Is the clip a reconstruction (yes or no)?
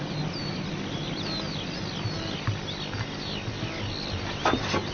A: no